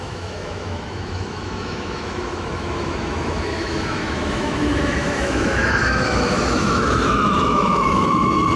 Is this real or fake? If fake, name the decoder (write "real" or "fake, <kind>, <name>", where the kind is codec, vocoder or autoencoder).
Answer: fake, autoencoder, DAC-VAE